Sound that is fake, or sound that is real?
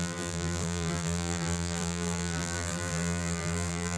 fake